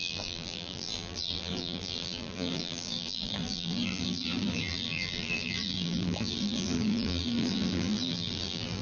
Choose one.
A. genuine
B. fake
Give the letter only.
B